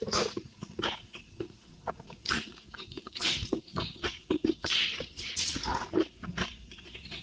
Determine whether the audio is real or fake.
fake